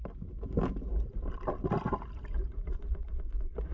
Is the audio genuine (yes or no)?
yes